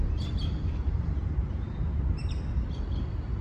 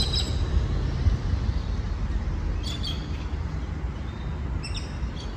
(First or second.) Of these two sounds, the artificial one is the first